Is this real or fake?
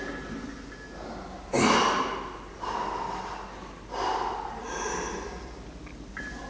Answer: real